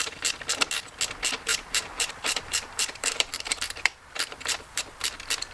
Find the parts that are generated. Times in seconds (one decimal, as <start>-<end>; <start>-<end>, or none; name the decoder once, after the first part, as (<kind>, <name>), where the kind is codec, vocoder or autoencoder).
1.5-4.8 (vocoder, BigVGAN v2)